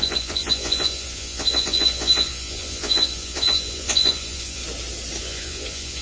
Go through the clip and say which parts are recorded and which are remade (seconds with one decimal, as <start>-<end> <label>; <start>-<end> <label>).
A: 0.0-4.6 remade; 4.6-5.2 recorded; 5.2-6.0 remade